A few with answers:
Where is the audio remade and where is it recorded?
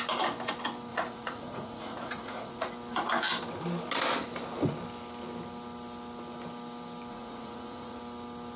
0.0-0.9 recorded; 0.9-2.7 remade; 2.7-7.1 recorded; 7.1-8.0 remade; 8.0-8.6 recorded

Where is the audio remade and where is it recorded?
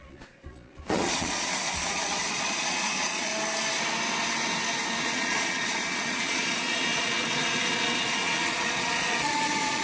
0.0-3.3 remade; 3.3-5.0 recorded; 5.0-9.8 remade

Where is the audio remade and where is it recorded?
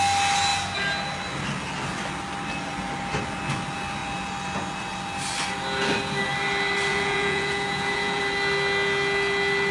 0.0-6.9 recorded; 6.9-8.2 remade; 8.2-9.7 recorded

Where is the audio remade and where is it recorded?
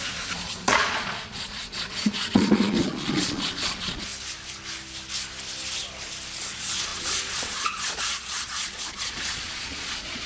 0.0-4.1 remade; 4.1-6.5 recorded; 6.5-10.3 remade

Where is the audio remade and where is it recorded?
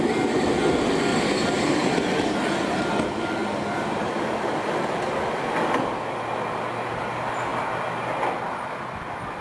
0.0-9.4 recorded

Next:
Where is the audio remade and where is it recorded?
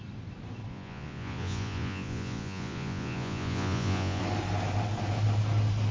0.0-0.7 recorded; 0.7-4.2 remade; 4.2-5.9 recorded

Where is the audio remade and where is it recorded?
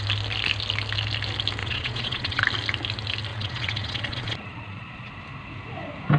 0.0-1.6 recorded; 1.6-2.4 remade; 2.4-3.3 recorded; 3.3-5.1 remade; 5.1-6.2 recorded